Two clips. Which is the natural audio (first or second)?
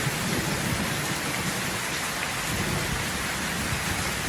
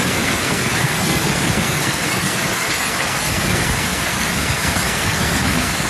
first